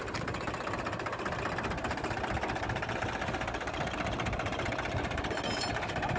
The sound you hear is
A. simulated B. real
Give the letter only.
B